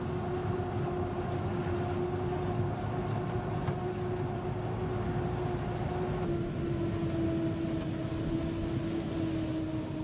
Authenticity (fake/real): real